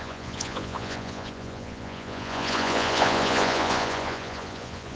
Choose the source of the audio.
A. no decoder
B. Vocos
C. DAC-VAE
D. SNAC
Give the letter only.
B